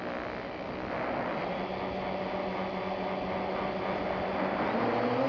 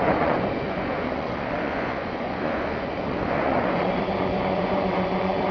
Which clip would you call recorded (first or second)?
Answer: first